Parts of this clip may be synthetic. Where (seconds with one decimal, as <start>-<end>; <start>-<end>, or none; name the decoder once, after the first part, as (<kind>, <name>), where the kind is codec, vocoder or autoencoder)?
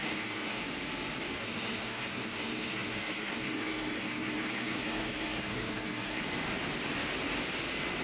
0.0-0.6 (codec, SNAC); 1.4-6.2